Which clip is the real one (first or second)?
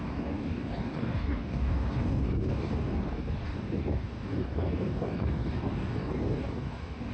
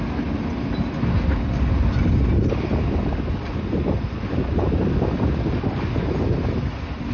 second